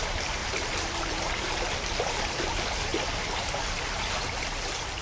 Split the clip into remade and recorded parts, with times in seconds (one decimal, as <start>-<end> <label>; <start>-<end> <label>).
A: 0.0-0.4 recorded; 0.4-1.3 remade; 1.3-5.0 recorded